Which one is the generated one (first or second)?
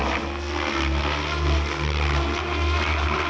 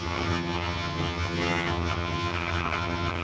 second